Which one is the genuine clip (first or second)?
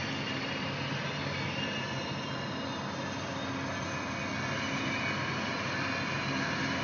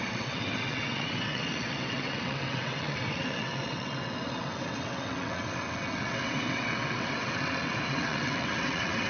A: first